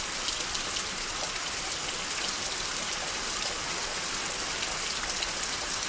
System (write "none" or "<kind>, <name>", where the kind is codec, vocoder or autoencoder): none